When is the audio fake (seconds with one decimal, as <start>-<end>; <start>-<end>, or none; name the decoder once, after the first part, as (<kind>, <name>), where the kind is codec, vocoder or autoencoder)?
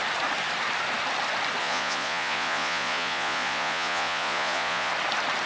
1.6-4.9 (vocoder, Vocos)